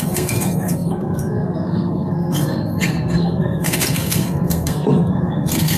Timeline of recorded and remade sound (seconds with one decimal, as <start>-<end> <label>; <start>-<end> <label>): 0.0-5.8 remade

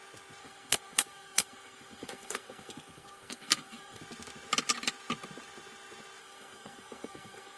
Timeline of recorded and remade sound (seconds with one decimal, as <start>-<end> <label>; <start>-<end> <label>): 0.0-0.4 recorded; 0.4-4.0 remade; 4.0-6.2 recorded; 6.2-7.6 remade